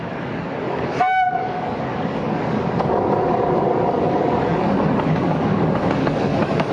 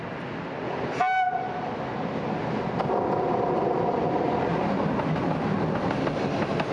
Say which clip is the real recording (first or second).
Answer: second